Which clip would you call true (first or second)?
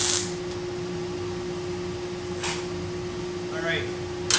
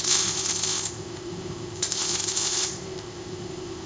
first